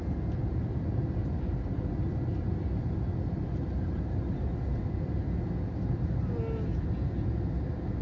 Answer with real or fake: real